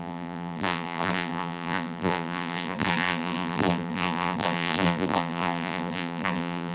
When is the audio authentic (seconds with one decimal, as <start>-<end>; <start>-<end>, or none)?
none